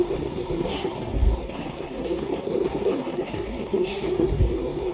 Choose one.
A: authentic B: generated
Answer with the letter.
B